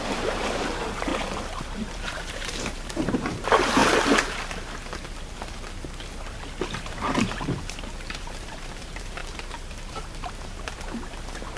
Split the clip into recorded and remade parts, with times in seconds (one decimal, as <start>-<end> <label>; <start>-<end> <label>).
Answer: 0.0-1.1 remade; 1.1-1.9 recorded; 1.9-3.8 remade; 3.8-6.8 recorded; 6.8-9.2 remade; 9.2-9.9 recorded; 9.9-11.6 remade

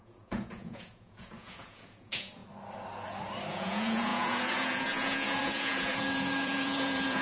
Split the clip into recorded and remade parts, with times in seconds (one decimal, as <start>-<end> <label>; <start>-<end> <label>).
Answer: 0.0-2.4 remade; 2.4-3.5 recorded; 3.5-7.2 remade

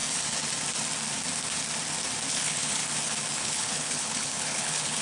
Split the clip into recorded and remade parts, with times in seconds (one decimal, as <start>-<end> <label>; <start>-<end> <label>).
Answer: 0.0-2.3 recorded; 2.3-2.8 remade; 2.8-3.3 recorded; 3.3-5.0 remade

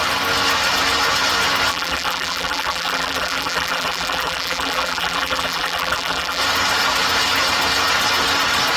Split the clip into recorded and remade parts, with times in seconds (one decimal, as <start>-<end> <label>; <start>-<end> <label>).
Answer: 0.0-1.7 recorded; 1.7-6.4 remade; 6.4-8.8 recorded

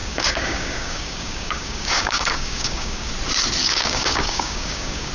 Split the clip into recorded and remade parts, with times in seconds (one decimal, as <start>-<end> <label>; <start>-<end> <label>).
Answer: 0.0-3.1 remade; 3.1-3.6 recorded; 3.6-5.1 remade

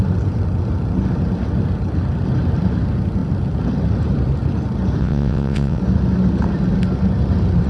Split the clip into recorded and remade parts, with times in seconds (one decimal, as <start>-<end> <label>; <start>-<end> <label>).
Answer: 0.0-5.0 recorded; 5.0-5.8 remade; 5.8-7.7 recorded

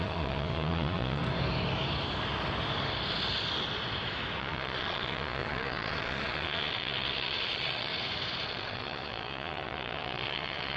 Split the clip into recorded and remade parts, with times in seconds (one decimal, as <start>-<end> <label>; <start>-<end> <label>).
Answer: 0.0-1.2 remade; 1.2-4.4 recorded; 4.4-7.9 remade; 7.9-8.5 recorded; 8.5-10.8 remade

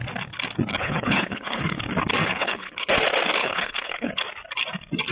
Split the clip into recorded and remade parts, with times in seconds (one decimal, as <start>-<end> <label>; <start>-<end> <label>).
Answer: 0.0-0.7 recorded; 0.7-1.6 remade; 1.6-2.3 recorded; 2.3-2.9 remade; 2.9-3.4 recorded; 3.4-4.1 remade; 4.1-5.1 recorded